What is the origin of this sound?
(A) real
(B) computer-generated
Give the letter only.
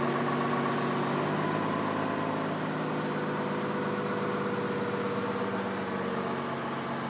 A